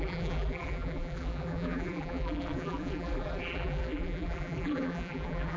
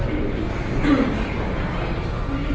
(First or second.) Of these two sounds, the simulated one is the first